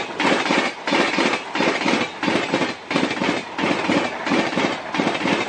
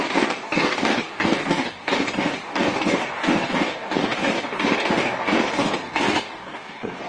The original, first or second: first